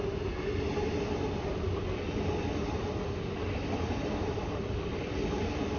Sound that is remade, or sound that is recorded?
recorded